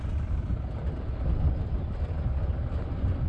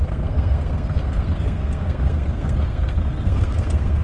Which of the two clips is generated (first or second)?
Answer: second